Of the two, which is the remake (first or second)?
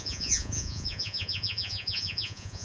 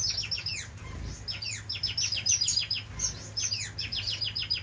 first